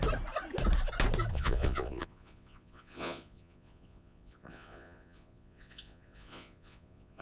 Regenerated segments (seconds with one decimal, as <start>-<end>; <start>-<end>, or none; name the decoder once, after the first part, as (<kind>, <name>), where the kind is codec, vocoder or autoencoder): 1.3-7.2 (vocoder, Vocos)